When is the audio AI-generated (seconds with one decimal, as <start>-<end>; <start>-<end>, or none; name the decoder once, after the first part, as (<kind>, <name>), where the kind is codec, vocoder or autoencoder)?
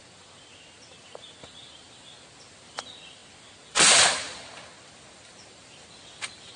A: none